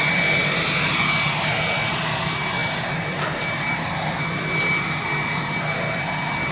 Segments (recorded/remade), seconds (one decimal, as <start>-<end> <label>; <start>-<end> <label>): 0.0-6.5 recorded